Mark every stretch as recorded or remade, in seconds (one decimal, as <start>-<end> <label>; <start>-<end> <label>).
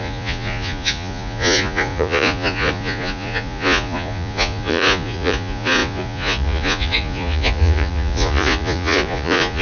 0.0-9.6 remade